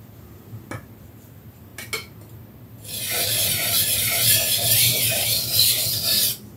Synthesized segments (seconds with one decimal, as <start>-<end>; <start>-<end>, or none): none